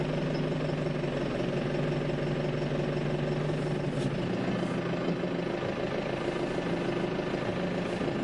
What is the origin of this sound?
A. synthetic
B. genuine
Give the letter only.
B